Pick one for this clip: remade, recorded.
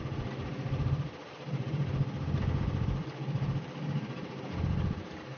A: recorded